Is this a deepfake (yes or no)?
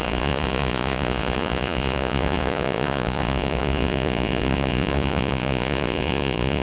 yes